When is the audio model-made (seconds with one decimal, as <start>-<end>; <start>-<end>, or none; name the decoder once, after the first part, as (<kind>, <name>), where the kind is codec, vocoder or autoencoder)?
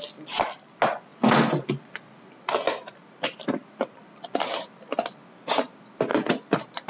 1.1-4.8 (vocoder, BigVGAN v2); 6.1-6.9